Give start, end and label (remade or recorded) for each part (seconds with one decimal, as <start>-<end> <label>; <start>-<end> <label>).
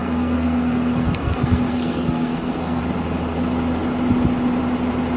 0.0-2.8 remade; 2.8-5.2 recorded